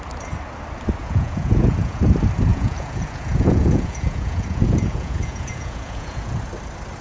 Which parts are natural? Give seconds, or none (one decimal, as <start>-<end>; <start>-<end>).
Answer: 0.0-1.0; 2.0-2.5; 6.4-7.0